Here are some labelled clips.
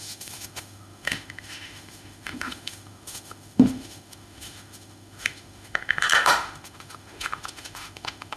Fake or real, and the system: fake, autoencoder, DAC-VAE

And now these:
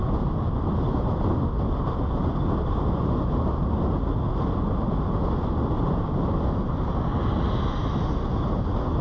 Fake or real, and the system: real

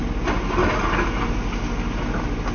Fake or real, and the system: real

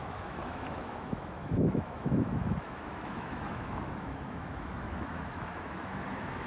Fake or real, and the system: fake, autoencoder, DAC-VAE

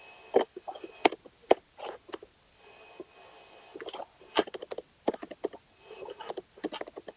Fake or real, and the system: real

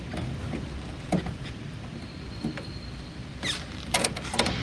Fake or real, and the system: real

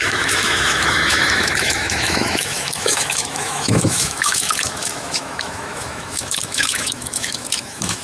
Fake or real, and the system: fake, autoencoder, DAC-VAE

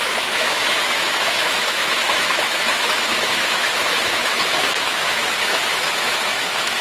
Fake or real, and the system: fake, autoencoder, DAC-VAE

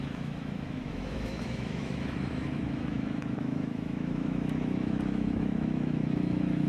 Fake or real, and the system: fake, autoencoder, DAC-VAE